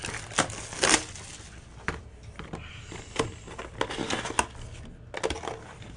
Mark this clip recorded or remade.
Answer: recorded